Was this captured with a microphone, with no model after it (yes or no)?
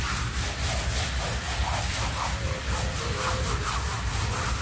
yes